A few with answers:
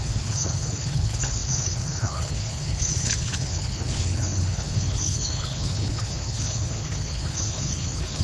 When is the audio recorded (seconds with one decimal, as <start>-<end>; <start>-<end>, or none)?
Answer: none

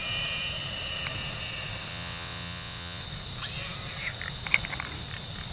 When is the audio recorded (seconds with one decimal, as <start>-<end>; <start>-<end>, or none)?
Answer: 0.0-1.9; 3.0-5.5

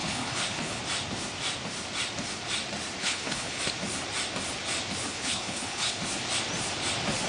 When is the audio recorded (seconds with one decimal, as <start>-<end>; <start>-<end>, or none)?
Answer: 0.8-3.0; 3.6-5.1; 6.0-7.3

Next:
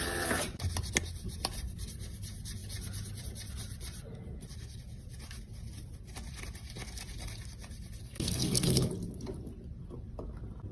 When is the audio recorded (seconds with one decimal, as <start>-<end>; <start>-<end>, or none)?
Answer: 0.0-8.0; 8.9-10.7

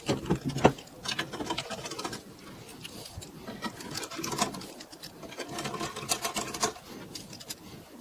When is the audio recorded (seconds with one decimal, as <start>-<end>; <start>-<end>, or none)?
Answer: none

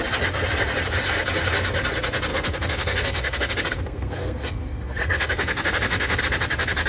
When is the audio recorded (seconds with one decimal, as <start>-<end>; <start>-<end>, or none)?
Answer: 0.0-2.3; 6.2-6.9